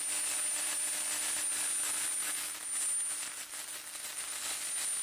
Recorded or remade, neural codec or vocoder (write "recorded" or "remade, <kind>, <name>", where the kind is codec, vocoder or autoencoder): recorded